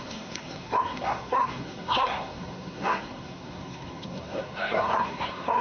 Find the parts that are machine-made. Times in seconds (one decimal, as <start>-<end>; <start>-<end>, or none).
0.0-5.6